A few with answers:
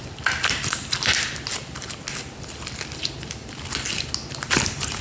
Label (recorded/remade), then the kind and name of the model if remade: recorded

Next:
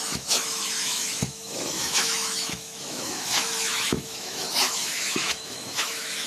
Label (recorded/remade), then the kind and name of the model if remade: remade, autoencoder, DAC-VAE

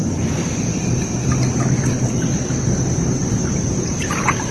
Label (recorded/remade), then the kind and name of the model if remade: remade, vocoder, BigVGAN v2